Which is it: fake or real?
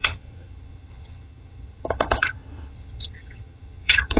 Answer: fake